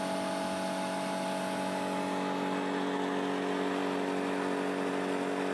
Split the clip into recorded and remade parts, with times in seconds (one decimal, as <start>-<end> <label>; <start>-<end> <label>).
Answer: 0.0-5.5 recorded